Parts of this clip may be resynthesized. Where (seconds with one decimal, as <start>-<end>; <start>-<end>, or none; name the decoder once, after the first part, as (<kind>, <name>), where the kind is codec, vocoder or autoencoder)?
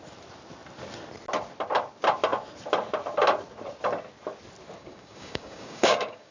4.8-6.3 (codec, DAC)